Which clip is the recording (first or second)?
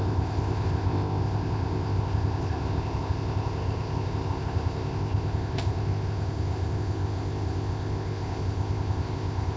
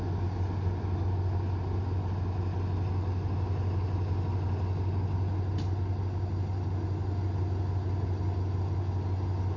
second